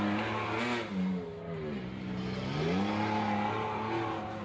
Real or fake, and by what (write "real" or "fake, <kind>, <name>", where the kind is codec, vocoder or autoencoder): real